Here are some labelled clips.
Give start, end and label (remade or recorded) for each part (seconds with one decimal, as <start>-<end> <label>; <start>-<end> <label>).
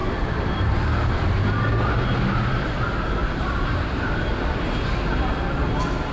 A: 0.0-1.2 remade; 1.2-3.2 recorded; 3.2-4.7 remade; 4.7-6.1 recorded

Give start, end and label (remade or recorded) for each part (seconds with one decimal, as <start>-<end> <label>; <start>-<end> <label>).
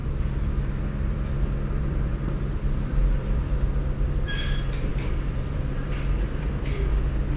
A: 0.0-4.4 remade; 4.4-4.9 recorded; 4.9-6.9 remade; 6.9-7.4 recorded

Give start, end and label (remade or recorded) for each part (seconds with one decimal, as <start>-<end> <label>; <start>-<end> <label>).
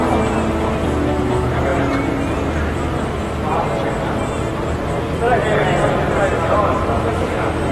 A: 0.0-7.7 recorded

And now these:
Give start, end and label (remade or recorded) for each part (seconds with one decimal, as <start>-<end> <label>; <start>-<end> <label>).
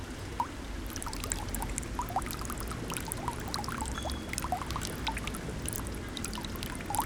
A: 0.0-1.4 remade; 1.4-7.1 recorded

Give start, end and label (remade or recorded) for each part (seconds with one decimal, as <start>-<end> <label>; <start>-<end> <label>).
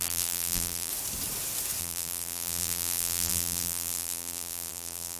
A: 0.0-0.9 remade; 0.9-1.8 recorded; 1.8-5.2 remade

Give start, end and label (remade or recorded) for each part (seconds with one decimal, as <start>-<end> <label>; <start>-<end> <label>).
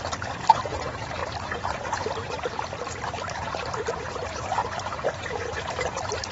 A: 0.0-1.2 recorded; 1.2-2.6 remade; 2.6-6.3 recorded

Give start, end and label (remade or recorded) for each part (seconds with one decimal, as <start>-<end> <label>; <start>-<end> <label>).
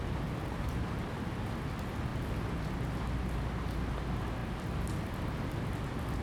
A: 0.0-0.4 recorded; 0.4-1.3 remade; 1.3-6.2 recorded